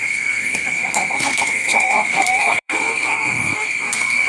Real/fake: fake